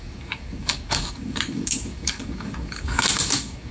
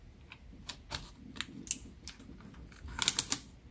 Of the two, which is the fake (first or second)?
first